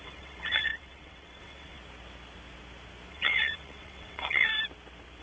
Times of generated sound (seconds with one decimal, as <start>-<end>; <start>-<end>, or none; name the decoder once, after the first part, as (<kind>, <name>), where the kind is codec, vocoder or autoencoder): 0.0-1.8 (vocoder, WaveNeXt); 3.1-4.5